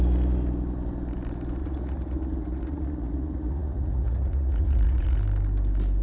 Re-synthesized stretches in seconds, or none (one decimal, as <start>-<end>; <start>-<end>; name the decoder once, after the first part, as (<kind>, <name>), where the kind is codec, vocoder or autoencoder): 1.6-5.2 (vocoder, Vocos)